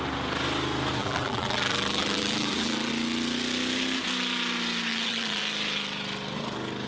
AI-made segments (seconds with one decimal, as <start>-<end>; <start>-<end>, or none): 1.0-2.9; 4.9-5.4

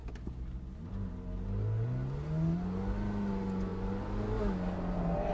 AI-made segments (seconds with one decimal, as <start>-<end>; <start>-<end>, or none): none

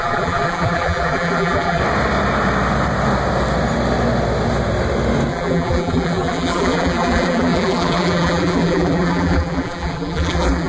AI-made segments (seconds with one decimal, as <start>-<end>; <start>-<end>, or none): 0.0-1.8; 5.3-10.7